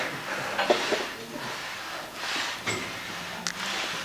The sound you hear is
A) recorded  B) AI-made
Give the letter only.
A